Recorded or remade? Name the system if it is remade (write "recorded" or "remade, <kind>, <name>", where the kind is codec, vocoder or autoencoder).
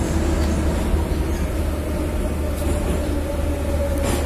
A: recorded